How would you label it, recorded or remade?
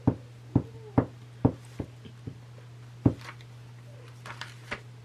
recorded